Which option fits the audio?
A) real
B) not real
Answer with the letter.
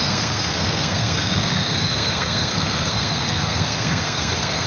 B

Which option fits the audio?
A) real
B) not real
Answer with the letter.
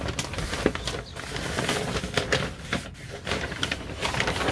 A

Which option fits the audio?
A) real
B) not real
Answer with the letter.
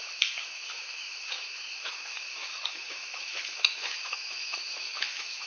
B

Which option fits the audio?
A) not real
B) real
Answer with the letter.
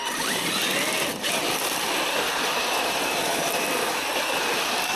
B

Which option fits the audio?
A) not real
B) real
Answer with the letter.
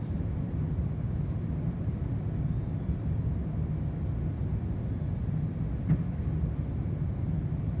B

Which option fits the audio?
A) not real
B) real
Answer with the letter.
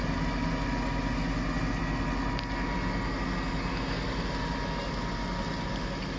B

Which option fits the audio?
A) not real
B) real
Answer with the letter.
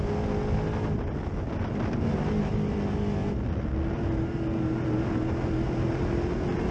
B